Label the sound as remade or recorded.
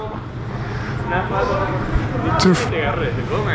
recorded